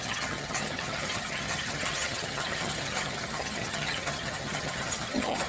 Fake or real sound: fake